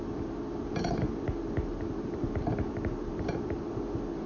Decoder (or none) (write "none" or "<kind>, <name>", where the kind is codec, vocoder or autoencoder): vocoder, BigVGAN v2